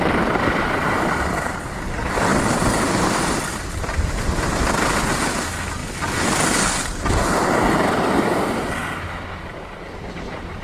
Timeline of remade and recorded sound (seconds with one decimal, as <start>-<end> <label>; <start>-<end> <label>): 0.0-5.8 remade; 5.8-9.4 recorded; 9.4-10.6 remade